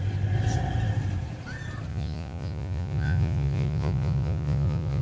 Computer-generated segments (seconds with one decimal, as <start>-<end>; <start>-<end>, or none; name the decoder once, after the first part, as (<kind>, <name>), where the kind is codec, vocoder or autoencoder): 1.9-5.0 (vocoder, Vocos)